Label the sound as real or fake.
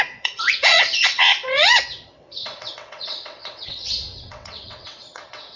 fake